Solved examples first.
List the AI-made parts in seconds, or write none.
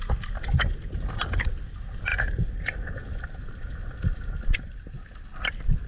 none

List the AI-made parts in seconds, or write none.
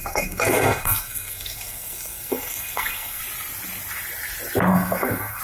0.0-3.2 (codec, SNAC); 4.7-5.4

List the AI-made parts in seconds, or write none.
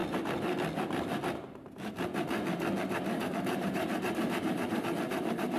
3.4-5.6 (vocoder, BigVGAN v2)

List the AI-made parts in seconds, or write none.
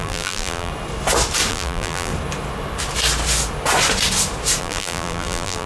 0.0-0.7 (vocoder, BigVGAN v2); 1.5-2.1; 4.6-5.7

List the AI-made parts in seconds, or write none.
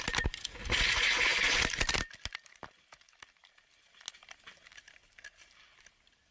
none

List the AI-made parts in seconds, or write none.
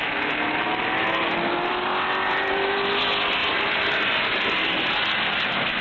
none